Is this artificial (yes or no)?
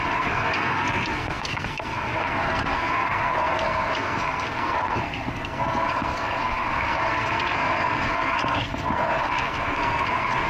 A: yes